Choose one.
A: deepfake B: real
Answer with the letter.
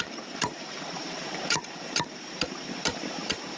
A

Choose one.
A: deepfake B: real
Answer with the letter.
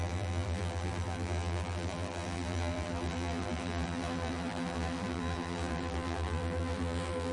A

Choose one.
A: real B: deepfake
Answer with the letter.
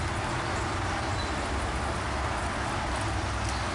A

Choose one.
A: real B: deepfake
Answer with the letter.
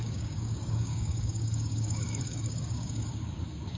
B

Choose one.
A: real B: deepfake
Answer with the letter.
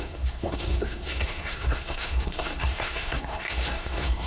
B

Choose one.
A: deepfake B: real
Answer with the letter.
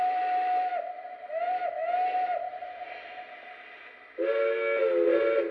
B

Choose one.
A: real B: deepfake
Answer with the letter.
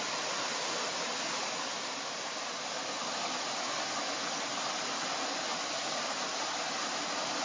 A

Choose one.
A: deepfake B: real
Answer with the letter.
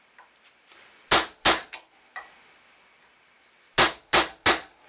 B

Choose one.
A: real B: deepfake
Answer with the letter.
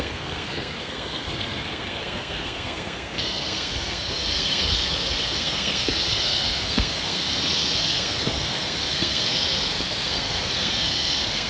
B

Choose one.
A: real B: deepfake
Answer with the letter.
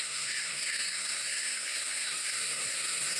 B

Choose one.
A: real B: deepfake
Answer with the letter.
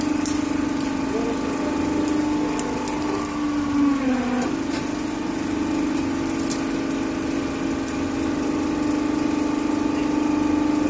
A